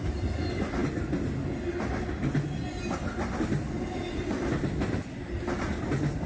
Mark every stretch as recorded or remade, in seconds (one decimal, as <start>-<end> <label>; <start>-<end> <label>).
0.0-6.3 recorded